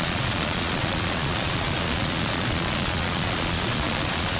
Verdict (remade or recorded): remade